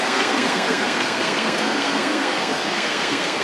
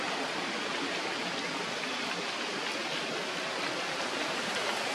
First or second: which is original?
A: second